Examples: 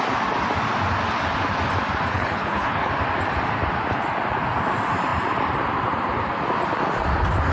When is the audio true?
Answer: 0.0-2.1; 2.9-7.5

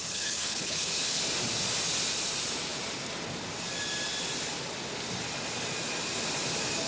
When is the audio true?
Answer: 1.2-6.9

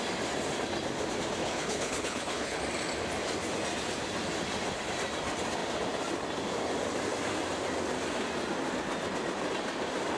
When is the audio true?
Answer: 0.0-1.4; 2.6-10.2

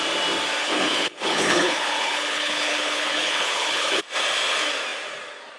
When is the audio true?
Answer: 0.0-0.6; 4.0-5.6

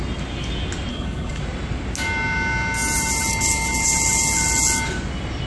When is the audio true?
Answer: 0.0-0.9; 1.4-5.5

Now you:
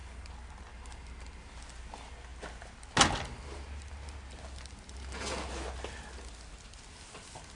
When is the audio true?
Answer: 0.0-7.5